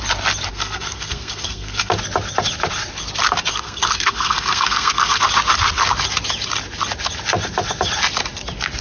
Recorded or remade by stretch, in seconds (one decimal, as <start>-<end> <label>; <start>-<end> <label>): 0.0-0.5 recorded; 0.5-1.9 remade; 1.9-3.5 recorded; 3.5-5.2 remade; 5.2-8.8 recorded